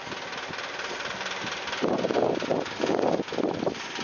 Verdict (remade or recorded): recorded